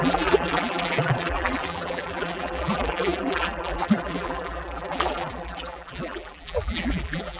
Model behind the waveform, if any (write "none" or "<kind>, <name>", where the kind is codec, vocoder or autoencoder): vocoder, BigVGAN v2